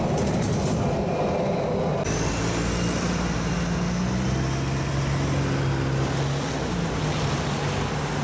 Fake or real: real